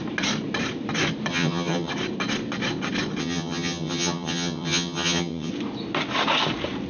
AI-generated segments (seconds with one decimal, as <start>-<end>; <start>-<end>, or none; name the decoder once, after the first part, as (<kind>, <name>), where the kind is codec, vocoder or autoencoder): 1.3-1.9 (vocoder, HiFi-GAN); 3.2-5.5